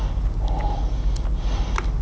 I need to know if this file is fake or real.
real